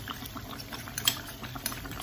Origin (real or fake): fake